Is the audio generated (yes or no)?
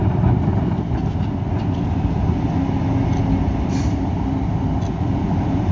no